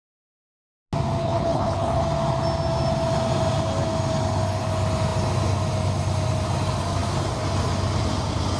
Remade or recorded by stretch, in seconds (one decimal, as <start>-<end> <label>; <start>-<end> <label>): 0.0-1.2 recorded; 1.2-2.0 remade; 2.0-8.6 recorded